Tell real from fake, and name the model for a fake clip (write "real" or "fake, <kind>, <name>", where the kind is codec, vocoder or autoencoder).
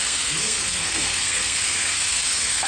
fake, codec, SNAC